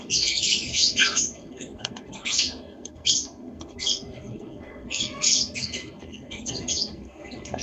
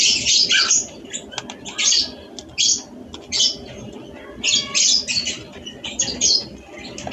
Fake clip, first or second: first